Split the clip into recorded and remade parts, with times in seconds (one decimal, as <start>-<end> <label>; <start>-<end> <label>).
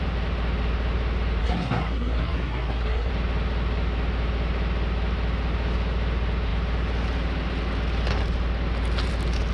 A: 0.0-1.4 recorded; 1.4-3.1 remade; 3.1-9.5 recorded